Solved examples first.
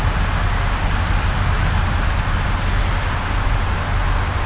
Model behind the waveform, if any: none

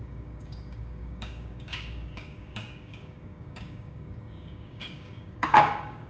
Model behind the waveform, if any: codec, DAC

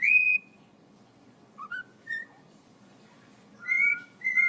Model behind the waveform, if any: vocoder, Vocos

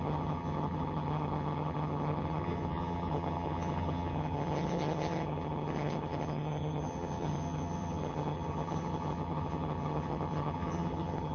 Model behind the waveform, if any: vocoder, HiFi-GAN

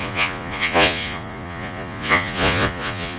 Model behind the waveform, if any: vocoder, Vocos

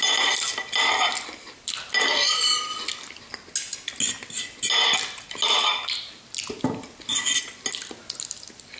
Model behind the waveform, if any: none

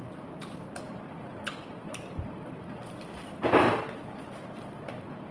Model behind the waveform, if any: none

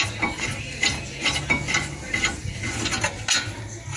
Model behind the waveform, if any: none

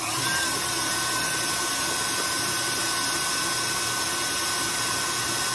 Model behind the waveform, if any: none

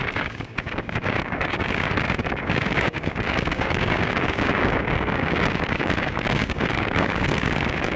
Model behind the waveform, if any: codec, DAC